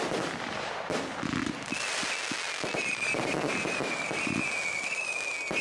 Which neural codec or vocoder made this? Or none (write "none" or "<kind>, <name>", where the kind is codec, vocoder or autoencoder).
none